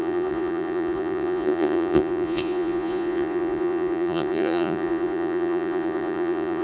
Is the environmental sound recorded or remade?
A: remade